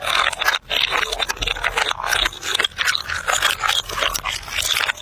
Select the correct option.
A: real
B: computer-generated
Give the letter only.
A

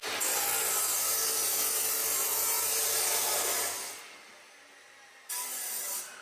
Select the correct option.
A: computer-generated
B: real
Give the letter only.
B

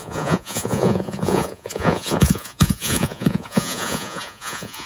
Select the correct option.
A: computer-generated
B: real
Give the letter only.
A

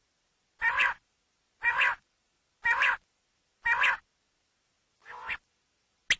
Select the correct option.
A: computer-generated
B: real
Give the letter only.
B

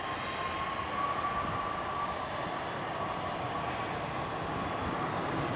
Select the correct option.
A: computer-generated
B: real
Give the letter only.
B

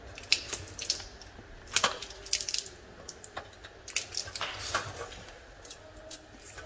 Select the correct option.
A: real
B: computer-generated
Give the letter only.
A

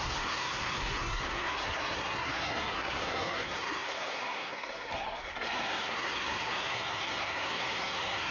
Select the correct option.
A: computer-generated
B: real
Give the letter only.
A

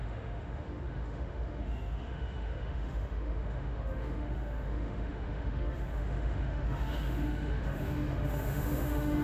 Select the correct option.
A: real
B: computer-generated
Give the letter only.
B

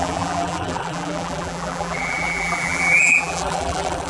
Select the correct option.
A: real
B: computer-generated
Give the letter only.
B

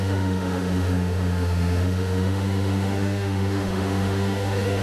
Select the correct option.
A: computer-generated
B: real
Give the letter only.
A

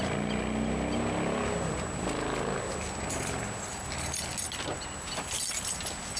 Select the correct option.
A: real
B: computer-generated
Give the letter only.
A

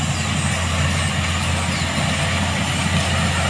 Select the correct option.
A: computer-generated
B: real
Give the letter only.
B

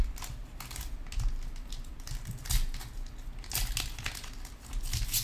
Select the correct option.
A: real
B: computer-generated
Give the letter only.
A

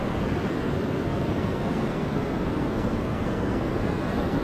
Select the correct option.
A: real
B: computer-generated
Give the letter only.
B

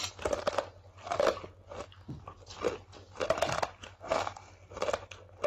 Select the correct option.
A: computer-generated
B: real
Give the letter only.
B